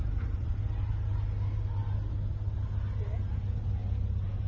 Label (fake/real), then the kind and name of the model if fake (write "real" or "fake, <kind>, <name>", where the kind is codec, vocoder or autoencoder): real